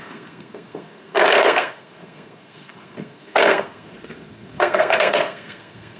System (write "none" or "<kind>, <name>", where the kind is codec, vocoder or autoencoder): codec, SNAC